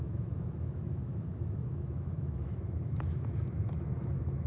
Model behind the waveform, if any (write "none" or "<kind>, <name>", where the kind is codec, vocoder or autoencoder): autoencoder, DAC-VAE